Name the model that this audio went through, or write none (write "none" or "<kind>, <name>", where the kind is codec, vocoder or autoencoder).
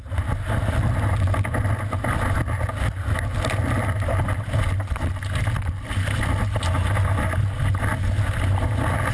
none